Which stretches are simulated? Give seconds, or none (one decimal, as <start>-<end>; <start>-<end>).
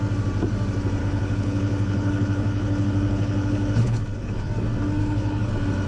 1.0-4.5; 5.0-5.5